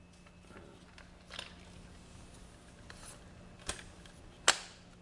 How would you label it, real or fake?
real